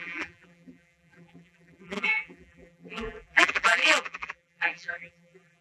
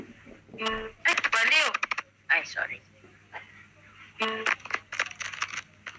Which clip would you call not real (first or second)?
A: first